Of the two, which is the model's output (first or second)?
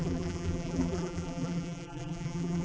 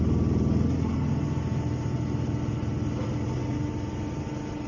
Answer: first